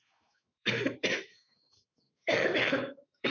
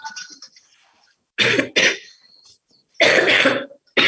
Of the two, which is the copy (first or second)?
first